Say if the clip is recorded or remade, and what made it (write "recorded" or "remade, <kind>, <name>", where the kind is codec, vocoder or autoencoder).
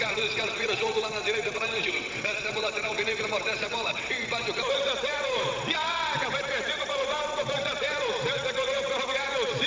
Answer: remade, vocoder, WaveNeXt